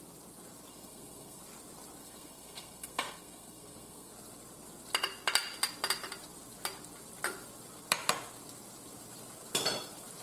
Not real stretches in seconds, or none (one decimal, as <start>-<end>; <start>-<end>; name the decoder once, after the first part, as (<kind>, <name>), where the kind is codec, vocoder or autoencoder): 0.7-1.4 (codec, SNAC); 2.0-4.1